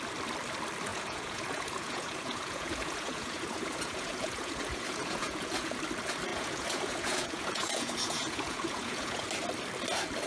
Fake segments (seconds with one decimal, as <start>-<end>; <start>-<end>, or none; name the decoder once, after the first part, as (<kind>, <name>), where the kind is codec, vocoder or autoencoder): 0.9-5.8 (vocoder, Vocos); 6.3-9.3